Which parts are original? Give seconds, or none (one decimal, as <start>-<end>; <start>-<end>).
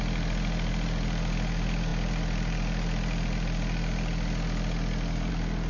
0.0-5.7